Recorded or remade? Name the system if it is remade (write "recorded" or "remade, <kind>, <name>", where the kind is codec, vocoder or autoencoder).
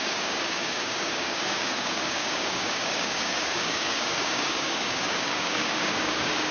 remade, codec, DAC